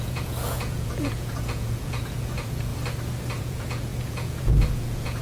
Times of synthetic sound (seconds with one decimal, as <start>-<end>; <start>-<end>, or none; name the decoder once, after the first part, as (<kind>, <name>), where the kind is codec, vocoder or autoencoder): 0.0-2.7 (vocoder, Vocos); 3.4-5.2